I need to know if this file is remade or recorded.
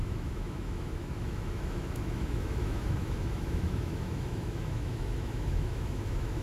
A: remade